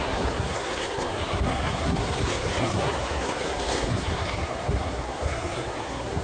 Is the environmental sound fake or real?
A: fake